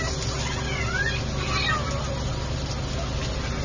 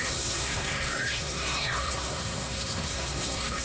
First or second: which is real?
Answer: first